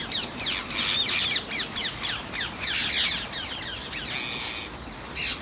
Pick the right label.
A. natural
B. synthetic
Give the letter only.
A